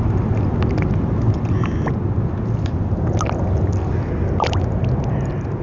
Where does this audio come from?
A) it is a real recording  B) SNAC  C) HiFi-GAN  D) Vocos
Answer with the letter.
A